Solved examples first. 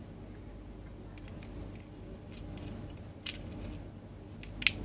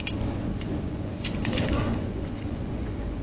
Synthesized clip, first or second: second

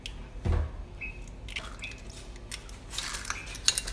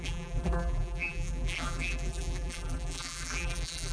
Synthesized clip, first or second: second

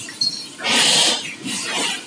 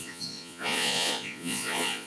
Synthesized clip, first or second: second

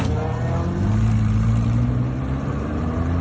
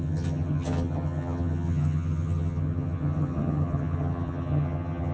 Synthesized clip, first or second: second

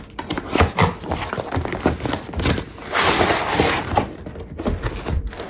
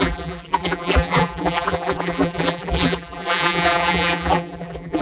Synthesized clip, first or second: second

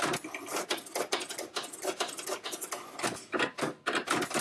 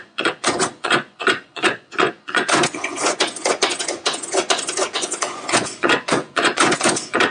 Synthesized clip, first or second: second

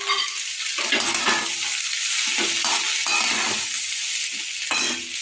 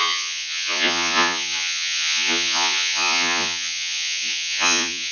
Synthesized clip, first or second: second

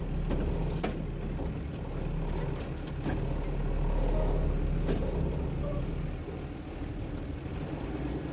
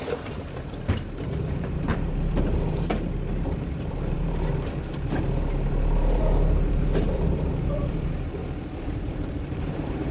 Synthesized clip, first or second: second